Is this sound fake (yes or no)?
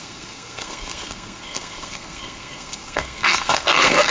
yes